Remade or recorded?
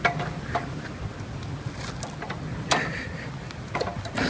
recorded